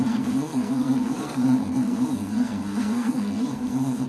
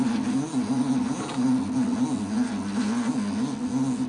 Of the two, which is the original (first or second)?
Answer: second